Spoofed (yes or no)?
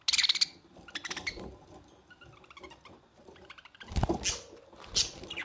no